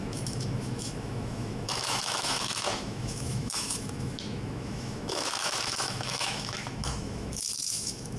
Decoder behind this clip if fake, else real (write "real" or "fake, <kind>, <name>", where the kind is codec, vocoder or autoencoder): fake, autoencoder, DAC-VAE